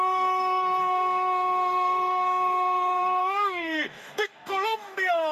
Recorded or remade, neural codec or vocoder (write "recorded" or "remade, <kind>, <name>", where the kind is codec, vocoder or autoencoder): remade, codec, DAC